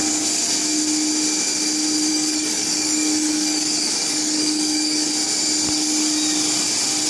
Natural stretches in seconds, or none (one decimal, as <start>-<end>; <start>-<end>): 0.0-2.1; 5.1-7.1